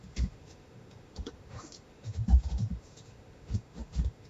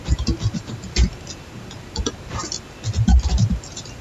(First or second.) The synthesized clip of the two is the first